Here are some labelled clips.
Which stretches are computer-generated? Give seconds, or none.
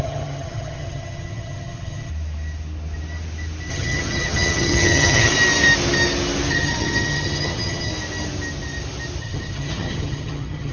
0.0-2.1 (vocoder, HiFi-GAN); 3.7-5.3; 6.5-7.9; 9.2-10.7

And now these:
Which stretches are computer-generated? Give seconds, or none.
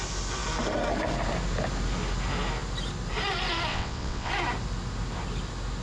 3.7-4.3 (vocoder, WaveNeXt)